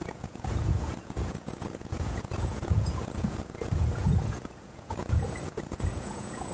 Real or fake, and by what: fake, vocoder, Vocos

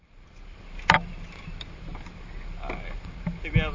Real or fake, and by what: real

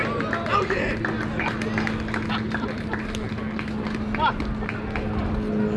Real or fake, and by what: real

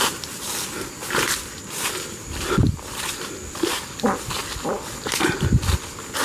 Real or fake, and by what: real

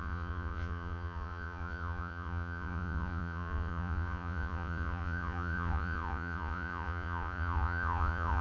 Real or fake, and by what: fake, vocoder, Vocos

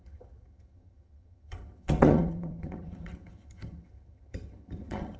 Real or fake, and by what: fake, vocoder, HiFi-GAN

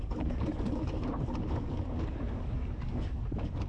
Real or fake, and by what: fake, codec, DAC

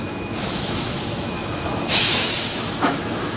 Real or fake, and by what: fake, autoencoder, DAC-VAE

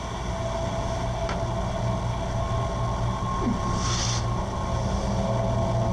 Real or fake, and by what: real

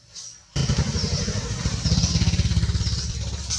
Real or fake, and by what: fake, vocoder, BigVGAN v2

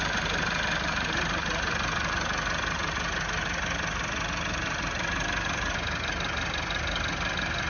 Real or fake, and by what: real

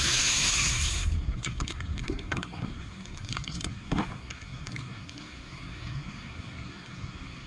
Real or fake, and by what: fake, codec, SNAC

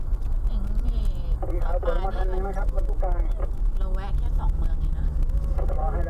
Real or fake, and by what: real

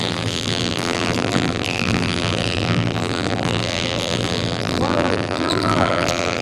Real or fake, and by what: fake, vocoder, BigVGAN v2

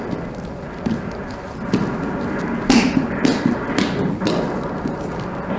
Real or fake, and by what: real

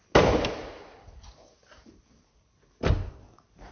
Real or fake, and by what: real